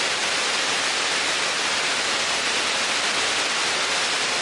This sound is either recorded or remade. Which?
recorded